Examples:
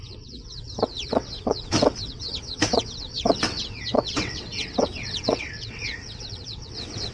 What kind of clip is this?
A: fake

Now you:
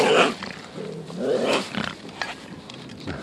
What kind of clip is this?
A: real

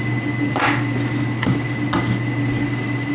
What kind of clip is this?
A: real